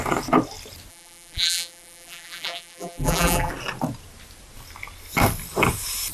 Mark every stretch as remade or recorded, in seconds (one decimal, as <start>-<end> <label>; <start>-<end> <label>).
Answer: 0.0-0.9 recorded; 0.9-3.5 remade; 3.5-6.1 recorded